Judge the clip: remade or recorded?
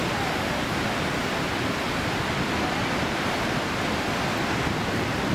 recorded